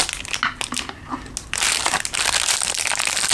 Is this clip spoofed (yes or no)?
no